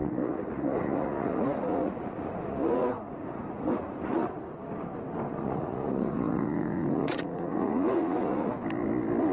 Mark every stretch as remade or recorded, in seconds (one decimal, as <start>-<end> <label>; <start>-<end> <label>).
0.0-4.4 remade; 4.4-5.3 recorded; 5.3-8.5 remade; 8.5-9.3 recorded